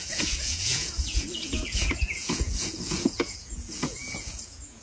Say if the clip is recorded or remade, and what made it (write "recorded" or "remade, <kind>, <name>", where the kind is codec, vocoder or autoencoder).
remade, vocoder, Vocos